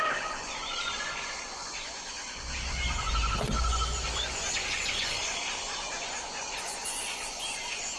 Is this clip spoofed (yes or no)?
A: yes